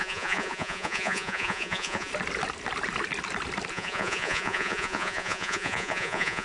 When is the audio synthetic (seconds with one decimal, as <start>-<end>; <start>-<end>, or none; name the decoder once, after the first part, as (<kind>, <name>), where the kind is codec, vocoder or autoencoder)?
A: 0.0-2.1 (vocoder, Vocos); 3.7-6.4